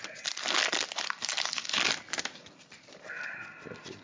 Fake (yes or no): no